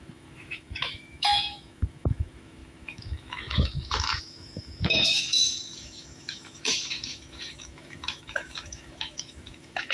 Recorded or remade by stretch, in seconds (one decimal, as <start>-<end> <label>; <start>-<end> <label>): 0.0-9.9 remade